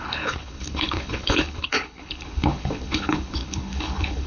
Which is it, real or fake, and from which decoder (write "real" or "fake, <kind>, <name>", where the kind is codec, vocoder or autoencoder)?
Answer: fake, codec, HILCodec